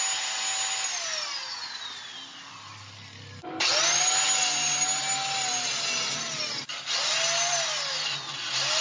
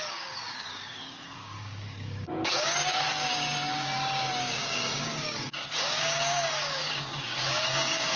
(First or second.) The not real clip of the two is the second